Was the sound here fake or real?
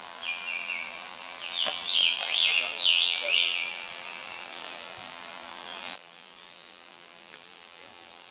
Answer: fake